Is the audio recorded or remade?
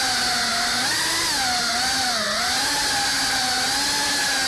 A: recorded